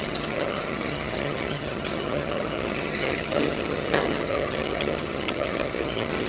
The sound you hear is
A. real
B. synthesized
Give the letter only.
B